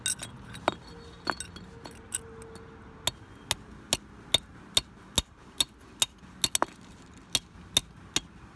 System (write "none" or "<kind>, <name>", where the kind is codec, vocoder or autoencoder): none